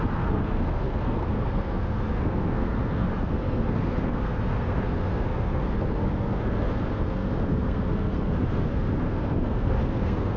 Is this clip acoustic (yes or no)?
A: no